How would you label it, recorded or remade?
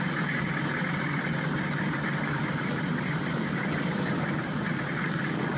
recorded